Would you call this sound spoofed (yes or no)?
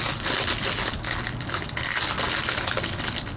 no